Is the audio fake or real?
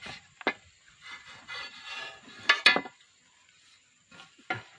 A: real